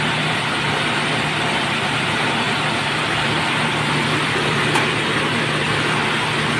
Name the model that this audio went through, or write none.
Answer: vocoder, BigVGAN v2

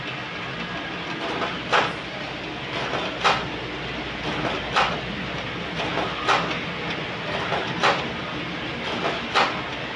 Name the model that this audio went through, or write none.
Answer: none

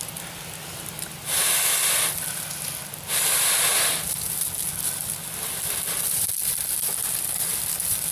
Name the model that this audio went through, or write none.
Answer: none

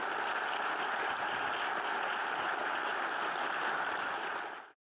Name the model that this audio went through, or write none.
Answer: none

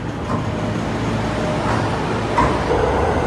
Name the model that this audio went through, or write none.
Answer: none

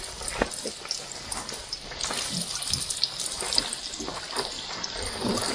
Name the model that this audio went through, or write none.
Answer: none